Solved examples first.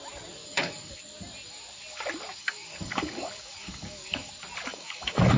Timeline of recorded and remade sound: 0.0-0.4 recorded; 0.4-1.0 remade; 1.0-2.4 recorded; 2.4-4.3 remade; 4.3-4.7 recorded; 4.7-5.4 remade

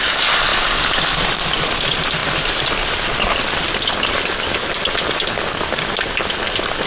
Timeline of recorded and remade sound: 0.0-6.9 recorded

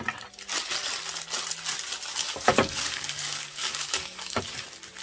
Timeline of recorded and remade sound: 0.0-2.2 recorded; 2.2-4.4 remade; 4.4-5.0 recorded

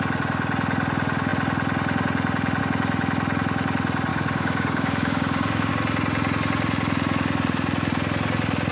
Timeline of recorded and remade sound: 0.0-4.1 recorded; 4.1-5.7 remade; 5.7-8.7 recorded

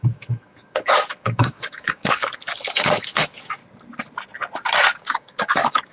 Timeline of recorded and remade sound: 0.0-3.6 remade; 3.6-5.0 recorded; 5.0-5.9 remade